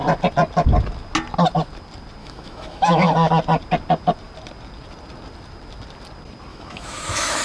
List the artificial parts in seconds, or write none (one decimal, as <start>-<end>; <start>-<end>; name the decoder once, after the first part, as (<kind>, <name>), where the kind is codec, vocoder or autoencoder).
2.2-3.3 (autoencoder, DAC-VAE); 6.5-7.4